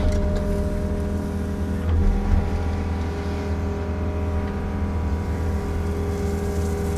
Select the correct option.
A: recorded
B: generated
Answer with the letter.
A